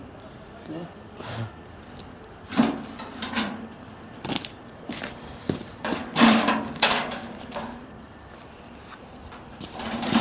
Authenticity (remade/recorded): remade